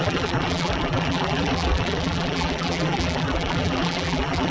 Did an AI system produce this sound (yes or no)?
yes